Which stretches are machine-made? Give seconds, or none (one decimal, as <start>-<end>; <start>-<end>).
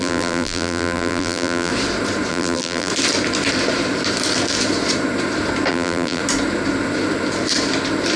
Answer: 0.0-1.7; 2.3-2.9; 5.7-6.2